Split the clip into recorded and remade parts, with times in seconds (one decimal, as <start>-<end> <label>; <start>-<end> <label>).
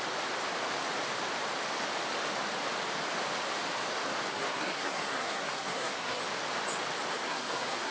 0.0-4.3 recorded; 4.3-6.2 remade; 6.2-7.1 recorded; 7.1-7.9 remade